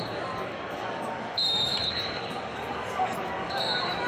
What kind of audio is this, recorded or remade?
remade